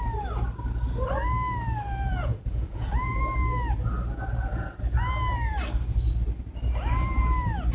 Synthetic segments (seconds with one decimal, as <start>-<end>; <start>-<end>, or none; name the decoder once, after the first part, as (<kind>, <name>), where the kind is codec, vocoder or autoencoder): 2.1-3.2 (vocoder, Vocos)